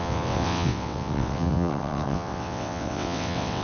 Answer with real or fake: fake